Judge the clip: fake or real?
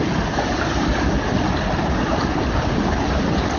real